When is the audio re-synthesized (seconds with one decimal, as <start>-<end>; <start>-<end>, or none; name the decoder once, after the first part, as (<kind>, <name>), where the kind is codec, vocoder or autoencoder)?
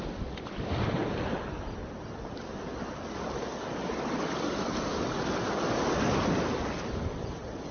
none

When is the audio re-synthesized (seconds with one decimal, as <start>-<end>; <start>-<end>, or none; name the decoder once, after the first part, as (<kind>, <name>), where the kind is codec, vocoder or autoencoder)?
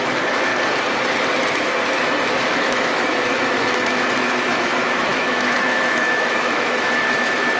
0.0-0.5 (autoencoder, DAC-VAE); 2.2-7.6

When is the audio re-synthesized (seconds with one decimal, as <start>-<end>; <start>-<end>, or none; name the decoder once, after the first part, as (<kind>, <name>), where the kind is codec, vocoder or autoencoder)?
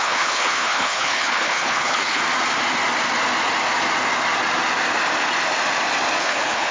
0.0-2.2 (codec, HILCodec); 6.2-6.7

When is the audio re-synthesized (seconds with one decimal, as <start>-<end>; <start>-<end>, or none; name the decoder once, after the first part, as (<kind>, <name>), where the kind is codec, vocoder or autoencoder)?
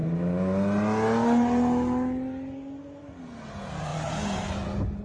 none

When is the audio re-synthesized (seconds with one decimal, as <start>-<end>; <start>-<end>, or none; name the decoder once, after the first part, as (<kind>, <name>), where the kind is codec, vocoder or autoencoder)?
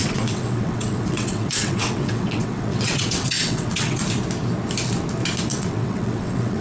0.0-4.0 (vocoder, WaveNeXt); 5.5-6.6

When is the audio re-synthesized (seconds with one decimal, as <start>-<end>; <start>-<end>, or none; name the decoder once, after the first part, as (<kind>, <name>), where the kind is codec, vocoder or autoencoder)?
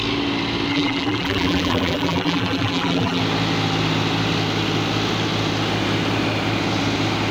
0.7-3.2 (vocoder, BigVGAN v2)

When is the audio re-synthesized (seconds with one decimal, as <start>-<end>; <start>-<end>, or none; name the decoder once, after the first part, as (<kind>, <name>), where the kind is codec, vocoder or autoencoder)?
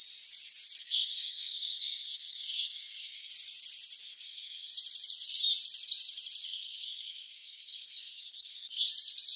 0.8-3.3 (codec, SNAC); 4.0-4.7; 6.5-8.8